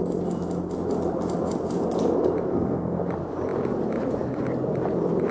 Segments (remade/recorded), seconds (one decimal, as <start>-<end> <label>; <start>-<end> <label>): 0.0-2.5 recorded; 2.5-3.0 remade; 3.0-5.3 recorded